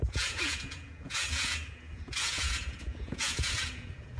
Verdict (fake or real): fake